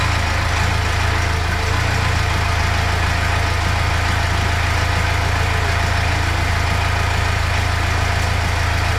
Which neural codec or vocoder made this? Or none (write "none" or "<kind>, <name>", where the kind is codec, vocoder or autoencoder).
none